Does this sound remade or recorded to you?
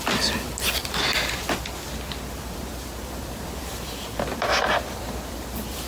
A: remade